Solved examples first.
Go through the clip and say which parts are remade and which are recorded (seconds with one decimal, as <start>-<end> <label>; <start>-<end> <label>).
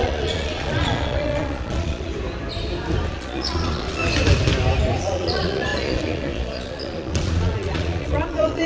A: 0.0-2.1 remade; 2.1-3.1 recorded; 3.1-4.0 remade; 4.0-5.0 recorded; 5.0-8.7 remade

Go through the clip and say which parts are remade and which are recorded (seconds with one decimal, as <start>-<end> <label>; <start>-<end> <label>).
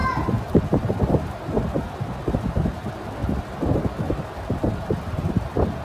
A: 0.0-1.5 recorded; 1.5-3.2 remade; 3.2-4.4 recorded; 4.4-5.8 remade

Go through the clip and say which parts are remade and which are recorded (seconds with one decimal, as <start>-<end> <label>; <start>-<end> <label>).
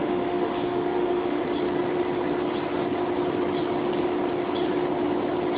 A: 0.0-1.4 remade; 1.4-5.6 recorded